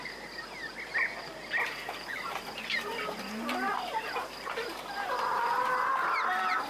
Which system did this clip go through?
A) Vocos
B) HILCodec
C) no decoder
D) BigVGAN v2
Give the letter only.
C